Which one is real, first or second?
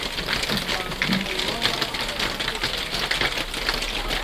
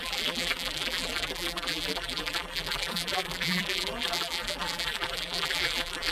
first